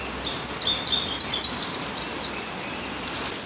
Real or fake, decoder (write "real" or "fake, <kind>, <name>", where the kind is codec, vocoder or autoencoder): real